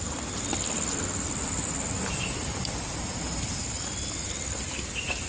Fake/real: real